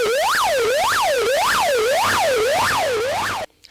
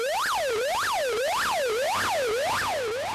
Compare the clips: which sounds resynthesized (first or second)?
first